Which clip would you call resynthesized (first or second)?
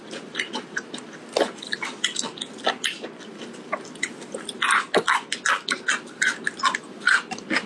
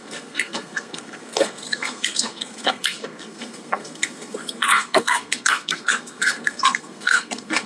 second